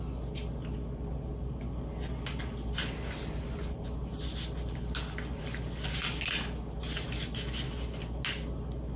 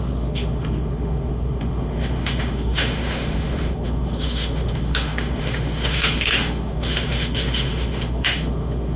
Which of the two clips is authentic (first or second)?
first